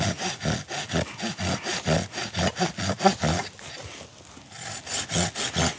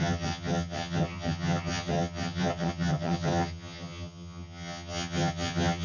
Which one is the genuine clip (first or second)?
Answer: first